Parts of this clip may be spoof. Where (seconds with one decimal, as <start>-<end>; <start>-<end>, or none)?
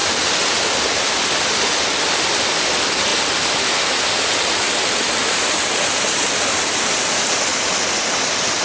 none